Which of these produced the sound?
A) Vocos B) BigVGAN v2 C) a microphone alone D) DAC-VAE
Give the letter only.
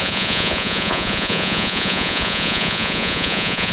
A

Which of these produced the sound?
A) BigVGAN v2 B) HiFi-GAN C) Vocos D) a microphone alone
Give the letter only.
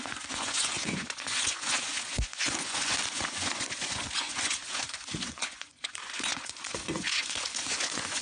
C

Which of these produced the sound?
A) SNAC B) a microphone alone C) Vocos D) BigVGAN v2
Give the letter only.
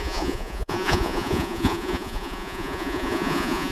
C